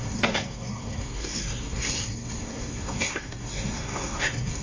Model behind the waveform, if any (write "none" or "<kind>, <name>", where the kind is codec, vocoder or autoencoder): codec, SNAC